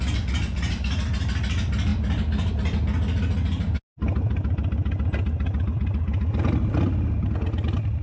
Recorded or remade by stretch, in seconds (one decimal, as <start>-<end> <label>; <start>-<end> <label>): 0.0-8.0 recorded